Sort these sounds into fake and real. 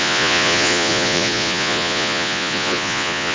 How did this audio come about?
fake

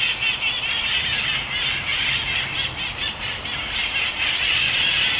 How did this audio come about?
real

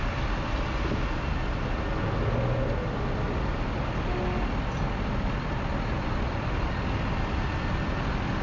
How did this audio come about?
real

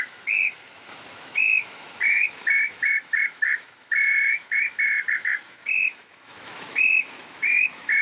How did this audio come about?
fake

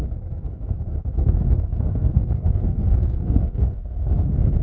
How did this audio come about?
fake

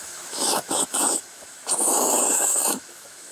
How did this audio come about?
fake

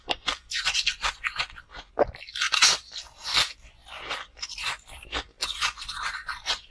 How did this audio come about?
real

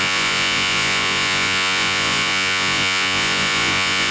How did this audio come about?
fake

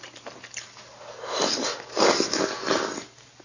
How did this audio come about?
real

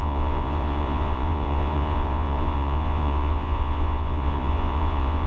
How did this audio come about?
fake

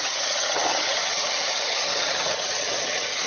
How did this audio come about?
fake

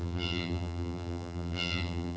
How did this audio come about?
fake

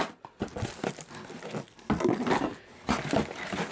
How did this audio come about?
real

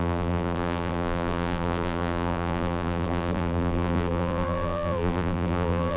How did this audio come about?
fake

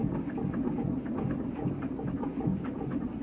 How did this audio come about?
fake